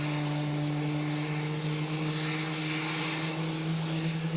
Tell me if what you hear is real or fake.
real